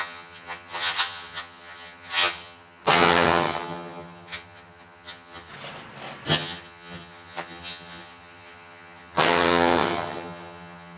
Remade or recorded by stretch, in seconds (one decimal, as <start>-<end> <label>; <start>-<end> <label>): 0.0-5.5 remade; 5.5-6.3 recorded; 6.3-11.0 remade

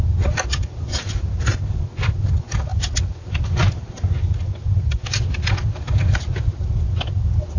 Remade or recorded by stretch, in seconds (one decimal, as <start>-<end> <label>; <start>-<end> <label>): 0.0-7.6 recorded

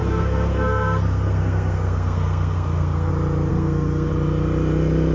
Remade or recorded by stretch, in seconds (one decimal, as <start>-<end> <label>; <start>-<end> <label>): 0.0-3.1 remade; 3.1-3.5 recorded; 3.5-4.1 remade; 4.1-5.1 recorded

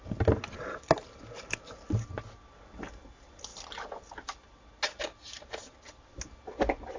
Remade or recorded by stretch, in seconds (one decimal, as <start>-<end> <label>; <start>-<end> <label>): 0.0-7.0 recorded

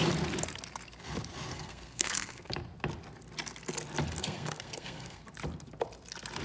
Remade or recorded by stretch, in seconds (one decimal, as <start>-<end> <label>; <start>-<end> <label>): 0.0-1.5 recorded; 1.5-2.5 remade; 2.5-4.2 recorded; 4.2-5.2 remade; 5.2-6.4 recorded